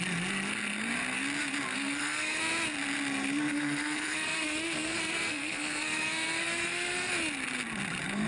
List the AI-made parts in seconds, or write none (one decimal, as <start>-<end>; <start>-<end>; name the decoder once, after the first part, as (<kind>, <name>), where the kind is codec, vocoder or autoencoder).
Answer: 1.7-2.4 (codec, SNAC); 3.5-7.1